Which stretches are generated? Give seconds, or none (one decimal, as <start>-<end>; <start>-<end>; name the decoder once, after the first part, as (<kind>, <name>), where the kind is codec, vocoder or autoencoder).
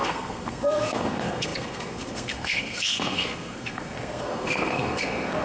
0.0-5.4 (codec, SNAC)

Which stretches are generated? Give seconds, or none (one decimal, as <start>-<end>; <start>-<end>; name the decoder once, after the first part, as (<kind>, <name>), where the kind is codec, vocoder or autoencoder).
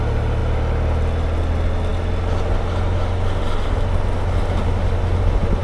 none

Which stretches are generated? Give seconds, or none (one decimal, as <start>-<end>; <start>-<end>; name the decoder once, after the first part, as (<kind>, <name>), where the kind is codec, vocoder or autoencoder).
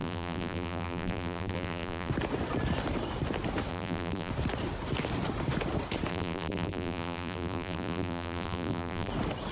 0.0-2.1 (vocoder, BigVGAN v2); 3.7-4.3; 6.1-9.1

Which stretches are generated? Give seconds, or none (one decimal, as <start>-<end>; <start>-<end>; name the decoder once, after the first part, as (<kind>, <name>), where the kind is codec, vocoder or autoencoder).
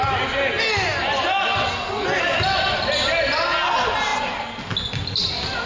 none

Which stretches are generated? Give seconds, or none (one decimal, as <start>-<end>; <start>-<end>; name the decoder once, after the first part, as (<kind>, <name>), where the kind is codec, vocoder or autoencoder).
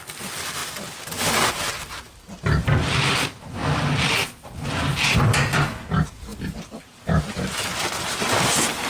none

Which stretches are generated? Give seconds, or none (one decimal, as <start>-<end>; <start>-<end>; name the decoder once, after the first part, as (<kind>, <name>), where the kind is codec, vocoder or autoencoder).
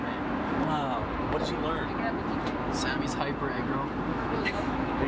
4.1-5.1 (autoencoder, DAC-VAE)